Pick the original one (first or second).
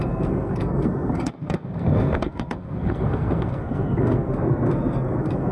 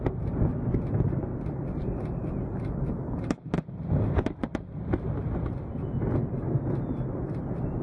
second